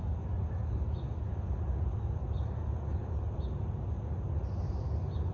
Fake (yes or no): no